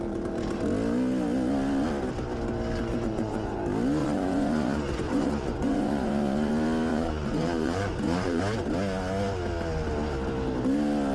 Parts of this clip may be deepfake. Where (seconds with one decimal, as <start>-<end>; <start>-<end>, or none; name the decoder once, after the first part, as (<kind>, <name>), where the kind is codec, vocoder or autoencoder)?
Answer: 2.9-3.6 (vocoder, Vocos); 4.0-6.5; 6.9-8.4